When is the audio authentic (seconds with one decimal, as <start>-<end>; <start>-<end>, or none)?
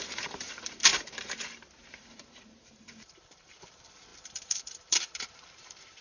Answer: none